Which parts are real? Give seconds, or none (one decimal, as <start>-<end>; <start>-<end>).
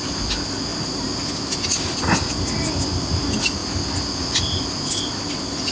0.0-5.7